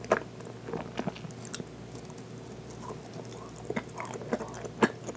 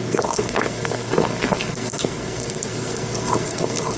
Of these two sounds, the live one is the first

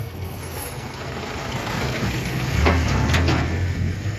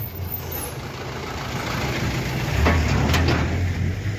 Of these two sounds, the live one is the second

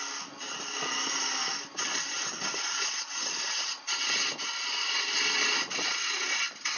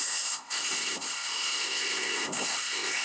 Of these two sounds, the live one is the first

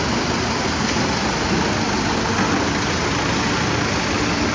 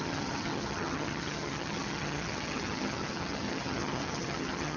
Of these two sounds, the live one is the first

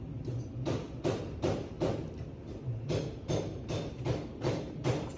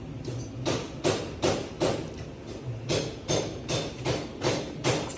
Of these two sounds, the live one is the second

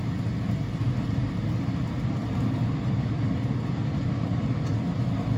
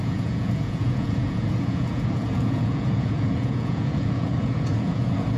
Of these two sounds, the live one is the first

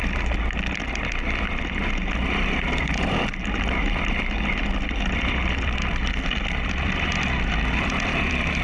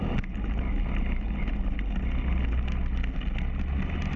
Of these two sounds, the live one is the second